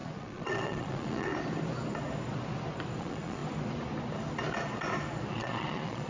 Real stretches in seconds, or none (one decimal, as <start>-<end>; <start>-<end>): 1.3-3.0; 3.4-5.3